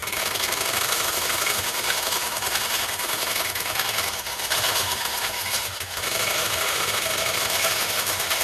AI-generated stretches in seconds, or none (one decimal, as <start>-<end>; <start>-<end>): 0.0-8.4